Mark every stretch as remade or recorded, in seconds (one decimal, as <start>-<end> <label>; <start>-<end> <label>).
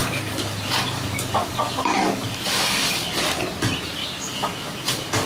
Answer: 0.0-3.2 remade; 3.2-4.0 recorded; 4.0-5.3 remade